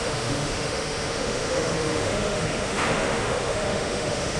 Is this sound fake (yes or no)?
yes